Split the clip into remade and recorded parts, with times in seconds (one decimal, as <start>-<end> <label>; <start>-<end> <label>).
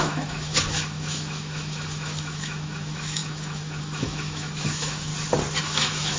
0.0-5.1 remade; 5.1-5.6 recorded; 5.6-6.2 remade